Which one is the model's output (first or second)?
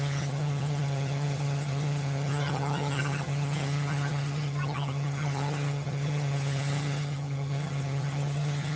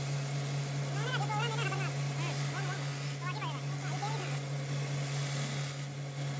first